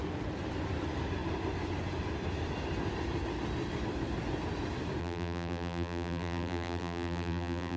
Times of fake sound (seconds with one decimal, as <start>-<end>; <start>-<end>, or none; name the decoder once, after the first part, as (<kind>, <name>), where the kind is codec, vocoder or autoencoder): 5.0-7.8 (vocoder, BigVGAN v2)